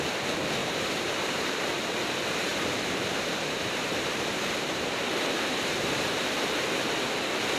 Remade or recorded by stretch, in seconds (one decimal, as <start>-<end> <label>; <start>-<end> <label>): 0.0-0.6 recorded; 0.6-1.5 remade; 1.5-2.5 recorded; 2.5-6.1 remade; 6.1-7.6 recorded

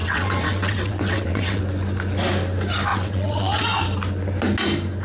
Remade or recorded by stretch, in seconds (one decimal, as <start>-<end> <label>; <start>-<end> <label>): 0.0-1.6 remade; 1.6-2.9 recorded; 2.9-3.8 remade; 3.8-5.0 recorded

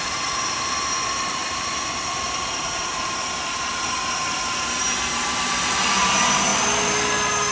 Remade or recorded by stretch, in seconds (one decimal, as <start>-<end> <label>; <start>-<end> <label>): 0.0-6.5 remade; 6.5-7.5 recorded

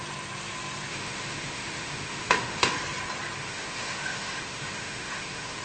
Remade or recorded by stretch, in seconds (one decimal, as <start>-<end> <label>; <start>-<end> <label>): 0.0-0.9 recorded; 0.9-2.7 remade; 2.7-3.4 recorded; 3.4-5.6 remade

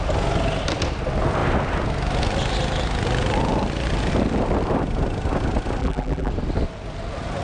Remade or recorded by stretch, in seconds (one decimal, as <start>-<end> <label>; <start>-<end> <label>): 0.0-5.8 recorded; 5.8-6.3 remade; 6.3-7.4 recorded